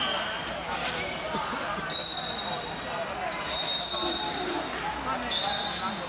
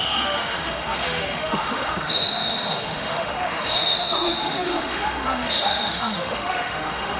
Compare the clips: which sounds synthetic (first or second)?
second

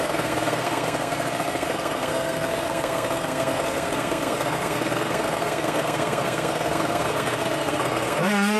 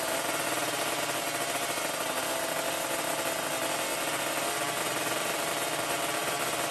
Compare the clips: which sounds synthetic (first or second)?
first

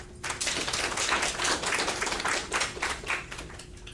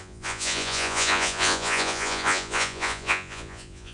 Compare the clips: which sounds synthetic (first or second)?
second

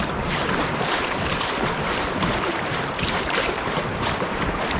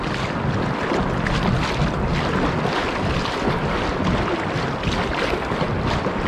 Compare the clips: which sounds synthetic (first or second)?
first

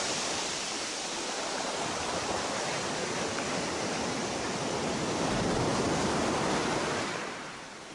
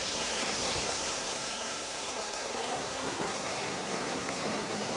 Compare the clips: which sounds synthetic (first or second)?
second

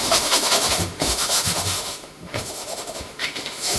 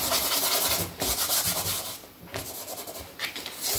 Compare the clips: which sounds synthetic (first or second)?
first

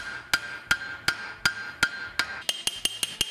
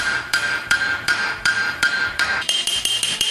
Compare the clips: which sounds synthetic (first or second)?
second